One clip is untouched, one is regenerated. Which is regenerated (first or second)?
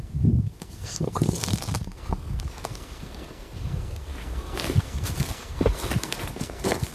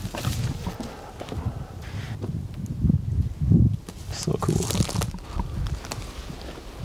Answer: first